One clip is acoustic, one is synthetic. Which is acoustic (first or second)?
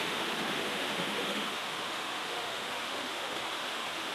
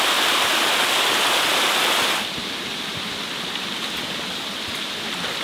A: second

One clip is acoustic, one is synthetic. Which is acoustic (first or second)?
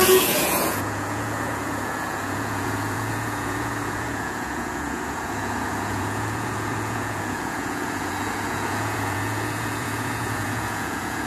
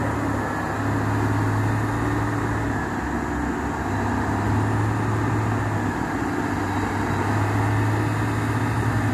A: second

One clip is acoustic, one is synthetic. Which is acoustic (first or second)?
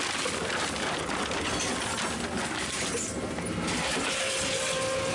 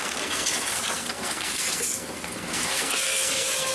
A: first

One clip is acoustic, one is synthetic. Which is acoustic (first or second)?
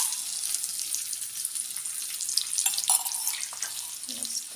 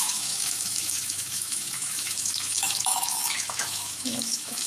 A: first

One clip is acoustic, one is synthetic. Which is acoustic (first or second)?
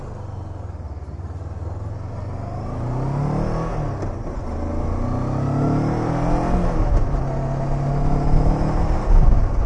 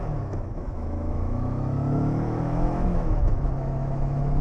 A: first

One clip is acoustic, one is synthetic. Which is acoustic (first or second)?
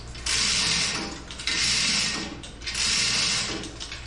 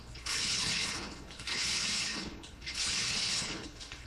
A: first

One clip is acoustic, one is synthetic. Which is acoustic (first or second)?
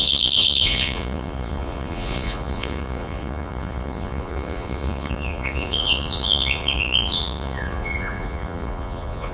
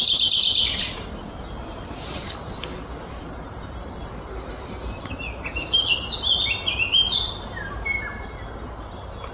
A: second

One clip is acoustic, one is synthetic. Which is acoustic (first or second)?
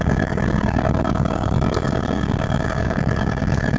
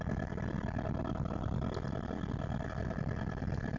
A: second